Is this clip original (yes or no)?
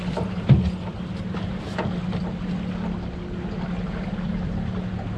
yes